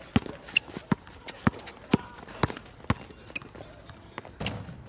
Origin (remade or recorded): recorded